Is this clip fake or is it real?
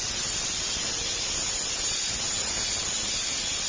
real